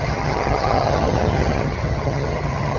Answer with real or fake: fake